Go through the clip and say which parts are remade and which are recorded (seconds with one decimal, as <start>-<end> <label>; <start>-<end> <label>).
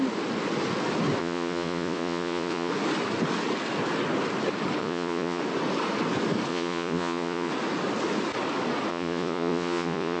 0.0-1.2 recorded; 1.2-2.7 remade; 2.7-4.8 recorded; 4.8-5.4 remade; 5.4-6.5 recorded; 6.5-7.5 remade; 7.5-8.9 recorded; 8.9-10.2 remade